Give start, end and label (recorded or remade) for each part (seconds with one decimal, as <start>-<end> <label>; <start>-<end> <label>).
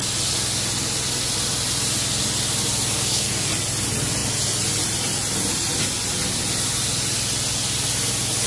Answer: 0.0-2.9 recorded; 2.9-3.5 remade; 3.5-8.5 recorded